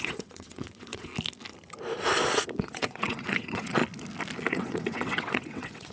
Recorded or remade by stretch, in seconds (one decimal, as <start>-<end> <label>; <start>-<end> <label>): 0.0-1.1 remade; 1.1-2.3 recorded; 2.3-3.8 remade; 3.8-4.5 recorded; 4.5-5.9 remade